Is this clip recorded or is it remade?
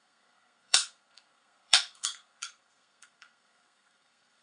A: remade